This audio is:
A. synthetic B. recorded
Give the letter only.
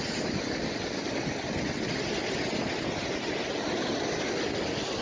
B